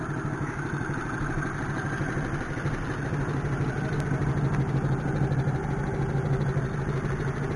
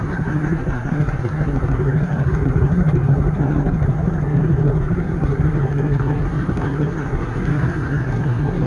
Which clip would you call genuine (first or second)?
first